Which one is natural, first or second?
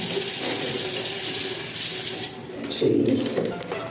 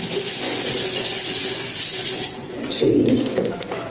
first